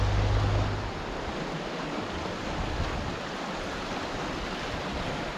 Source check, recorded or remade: recorded